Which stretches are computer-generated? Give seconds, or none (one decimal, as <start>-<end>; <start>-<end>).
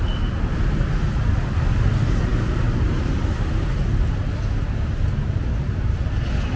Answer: none